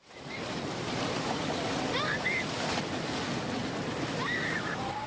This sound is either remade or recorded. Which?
recorded